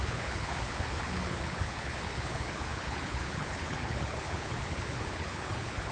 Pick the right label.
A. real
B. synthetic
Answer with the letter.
B